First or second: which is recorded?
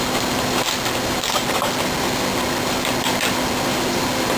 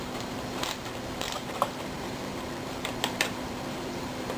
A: first